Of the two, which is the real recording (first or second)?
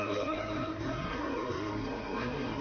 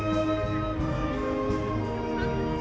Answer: second